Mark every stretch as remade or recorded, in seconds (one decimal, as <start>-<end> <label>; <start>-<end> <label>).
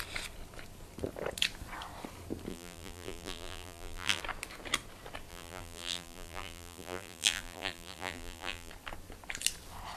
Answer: 0.0-2.5 recorded; 2.5-4.2 remade; 4.2-5.3 recorded; 5.3-8.7 remade; 8.7-10.0 recorded